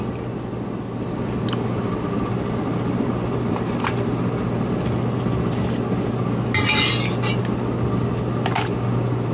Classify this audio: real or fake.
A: real